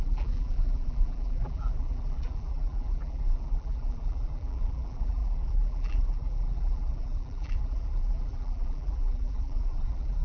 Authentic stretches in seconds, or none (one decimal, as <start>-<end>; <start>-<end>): none